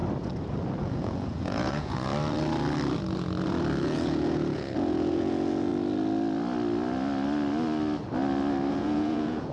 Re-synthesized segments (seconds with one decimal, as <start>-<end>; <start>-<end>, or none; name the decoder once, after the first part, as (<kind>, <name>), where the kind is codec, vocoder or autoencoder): 0.8-2.1 (vocoder, Vocos); 3.8-5.7; 8.7-9.5